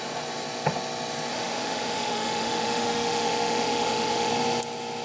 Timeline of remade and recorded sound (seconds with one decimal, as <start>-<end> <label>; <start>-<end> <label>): 0.0-1.3 recorded; 1.3-4.3 remade; 4.3-5.0 recorded

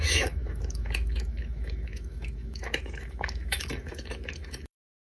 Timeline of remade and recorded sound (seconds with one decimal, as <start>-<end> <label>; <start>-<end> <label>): 0.0-5.1 remade

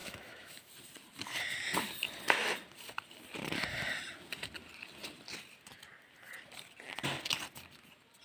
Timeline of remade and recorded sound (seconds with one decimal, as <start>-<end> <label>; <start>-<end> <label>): 0.0-0.7 remade; 0.7-8.2 recorded

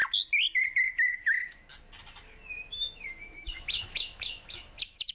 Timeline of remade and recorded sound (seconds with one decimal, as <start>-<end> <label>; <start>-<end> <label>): 0.0-0.8 recorded; 0.8-1.7 remade; 1.7-2.7 recorded; 2.7-5.1 remade